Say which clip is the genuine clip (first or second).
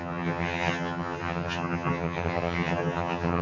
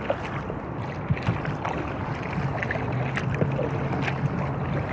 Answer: second